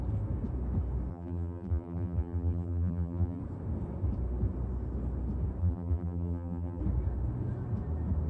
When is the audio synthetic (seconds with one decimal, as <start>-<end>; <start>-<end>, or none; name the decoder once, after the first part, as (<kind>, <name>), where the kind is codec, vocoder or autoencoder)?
1.1-3.4 (vocoder, BigVGAN v2); 5.6-6.8